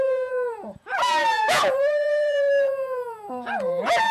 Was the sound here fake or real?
fake